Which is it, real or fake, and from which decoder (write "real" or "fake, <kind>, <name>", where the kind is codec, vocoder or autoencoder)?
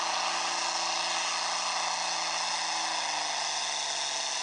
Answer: real